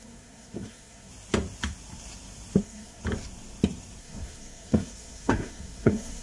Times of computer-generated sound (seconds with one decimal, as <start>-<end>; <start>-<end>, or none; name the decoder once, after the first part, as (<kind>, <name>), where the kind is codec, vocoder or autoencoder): 0.0-1.1 (codec, SNAC); 2.6-3.0; 4.0-6.2